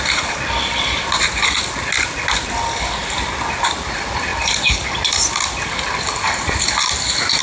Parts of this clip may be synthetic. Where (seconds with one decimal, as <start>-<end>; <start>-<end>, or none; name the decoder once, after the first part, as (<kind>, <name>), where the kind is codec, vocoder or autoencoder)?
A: none